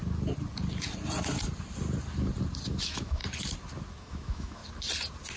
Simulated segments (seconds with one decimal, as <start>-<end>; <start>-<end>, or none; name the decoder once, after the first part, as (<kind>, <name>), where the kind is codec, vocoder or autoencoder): 2.7-3.2 (autoencoder, DAC-VAE); 4.0-4.6